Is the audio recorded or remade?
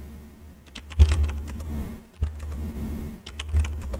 recorded